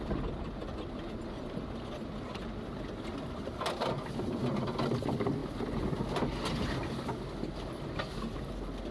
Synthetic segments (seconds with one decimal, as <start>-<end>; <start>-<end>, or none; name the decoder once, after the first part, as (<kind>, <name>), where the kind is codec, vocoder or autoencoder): none

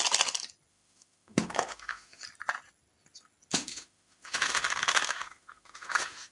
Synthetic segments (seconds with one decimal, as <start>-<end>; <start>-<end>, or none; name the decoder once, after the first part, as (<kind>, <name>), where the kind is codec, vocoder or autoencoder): 0.7-2.2 (autoencoder, DAC-VAE); 3.5-6.3

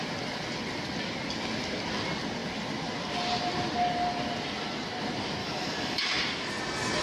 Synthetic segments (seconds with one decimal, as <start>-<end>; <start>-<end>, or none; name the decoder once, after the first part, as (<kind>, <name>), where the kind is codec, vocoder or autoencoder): 5.4-6.2 (autoencoder, DAC-VAE)

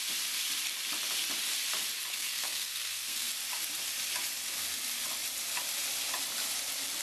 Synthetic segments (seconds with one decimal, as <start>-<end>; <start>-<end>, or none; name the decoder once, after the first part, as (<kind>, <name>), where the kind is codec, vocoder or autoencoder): 2.1-3.3 (codec, SNAC)

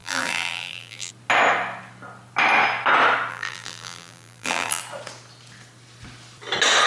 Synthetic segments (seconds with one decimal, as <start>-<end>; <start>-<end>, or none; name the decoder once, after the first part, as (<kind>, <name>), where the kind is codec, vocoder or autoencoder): 0.0-1.1 (vocoder, BigVGAN v2); 3.3-4.8

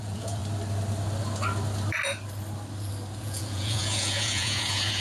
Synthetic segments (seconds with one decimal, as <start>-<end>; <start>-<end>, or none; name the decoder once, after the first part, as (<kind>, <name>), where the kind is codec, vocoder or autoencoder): 0.0-0.4 (vocoder, Vocos); 3.2-5.0